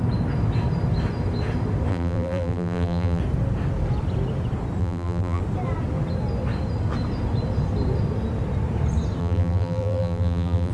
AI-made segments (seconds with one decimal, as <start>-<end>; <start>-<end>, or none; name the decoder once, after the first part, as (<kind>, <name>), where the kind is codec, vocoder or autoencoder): 1.9-3.2 (vocoder, BigVGAN v2); 4.8-5.4; 9.2-10.7